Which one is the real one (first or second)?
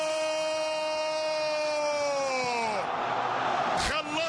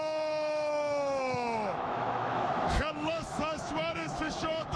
first